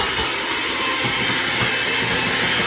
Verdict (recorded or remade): recorded